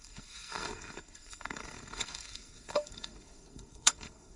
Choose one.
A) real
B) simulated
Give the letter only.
B